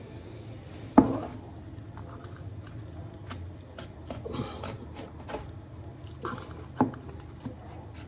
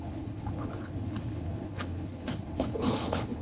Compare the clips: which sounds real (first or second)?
first